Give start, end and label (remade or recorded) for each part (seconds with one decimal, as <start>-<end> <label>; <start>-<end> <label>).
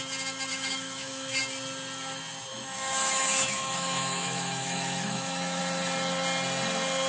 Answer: 0.0-0.5 recorded; 0.5-1.4 remade; 1.4-2.5 recorded; 2.5-5.6 remade; 5.6-7.1 recorded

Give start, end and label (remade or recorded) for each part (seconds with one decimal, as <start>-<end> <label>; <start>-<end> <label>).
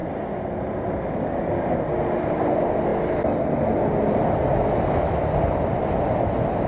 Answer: 0.0-6.7 recorded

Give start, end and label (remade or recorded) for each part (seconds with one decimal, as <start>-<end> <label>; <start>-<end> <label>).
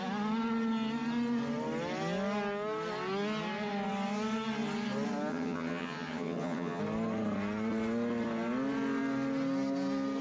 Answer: 0.0-5.3 recorded; 5.3-6.8 remade; 6.8-10.2 recorded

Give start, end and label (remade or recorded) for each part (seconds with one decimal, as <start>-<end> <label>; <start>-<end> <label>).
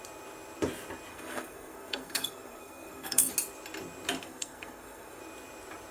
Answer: 0.0-1.1 recorded; 1.1-3.3 remade; 3.3-4.2 recorded; 4.2-5.2 remade; 5.2-5.9 recorded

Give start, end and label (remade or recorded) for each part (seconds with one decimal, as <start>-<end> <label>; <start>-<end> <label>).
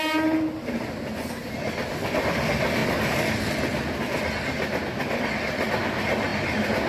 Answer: 0.0-6.3 recorded; 6.3-6.9 remade